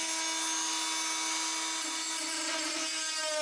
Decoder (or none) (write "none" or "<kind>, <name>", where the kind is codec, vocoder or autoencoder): none